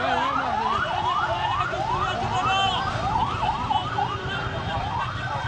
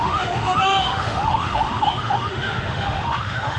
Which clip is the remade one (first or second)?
second